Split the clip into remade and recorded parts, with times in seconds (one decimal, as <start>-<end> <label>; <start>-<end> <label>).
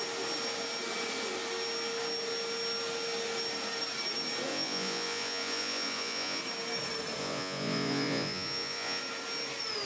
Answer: 0.0-4.5 recorded; 4.5-6.4 remade; 6.4-7.2 recorded; 7.2-9.0 remade; 9.0-9.9 recorded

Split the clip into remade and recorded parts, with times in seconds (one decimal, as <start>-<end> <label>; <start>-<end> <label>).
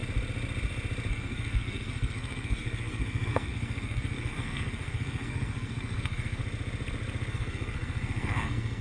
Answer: 0.0-1.1 recorded; 1.1-6.4 remade; 6.4-7.3 recorded; 7.3-8.8 remade